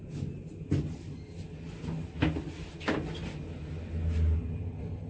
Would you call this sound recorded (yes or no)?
yes